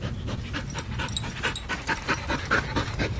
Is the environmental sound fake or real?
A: real